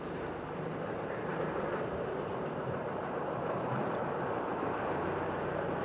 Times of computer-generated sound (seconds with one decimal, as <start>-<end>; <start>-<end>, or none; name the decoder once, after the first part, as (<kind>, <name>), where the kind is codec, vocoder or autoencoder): 0.7-3.4 (vocoder, BigVGAN v2); 4.5-5.8